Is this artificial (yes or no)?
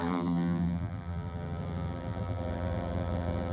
yes